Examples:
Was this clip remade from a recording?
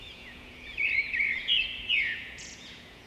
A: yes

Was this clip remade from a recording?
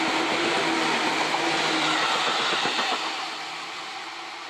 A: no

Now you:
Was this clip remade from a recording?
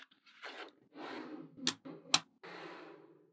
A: no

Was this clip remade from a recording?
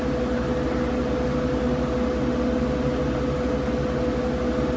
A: no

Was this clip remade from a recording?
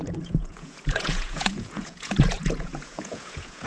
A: yes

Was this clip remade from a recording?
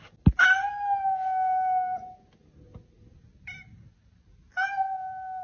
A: no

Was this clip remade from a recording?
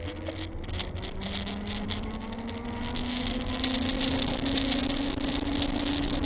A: no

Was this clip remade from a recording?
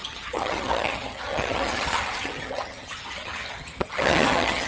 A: yes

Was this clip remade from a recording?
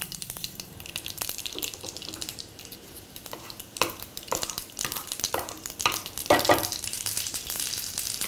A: yes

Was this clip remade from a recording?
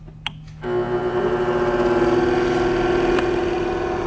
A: no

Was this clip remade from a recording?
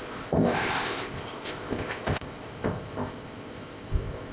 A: yes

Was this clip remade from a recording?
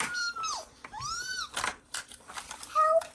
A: yes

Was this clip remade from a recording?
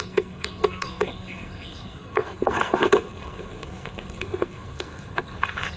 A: yes